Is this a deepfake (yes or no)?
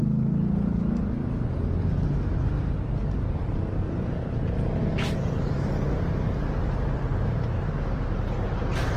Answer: no